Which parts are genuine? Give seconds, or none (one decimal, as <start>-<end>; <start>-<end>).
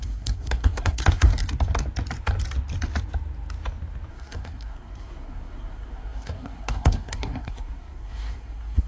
1.3-4.1